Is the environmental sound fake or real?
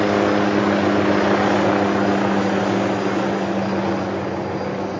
real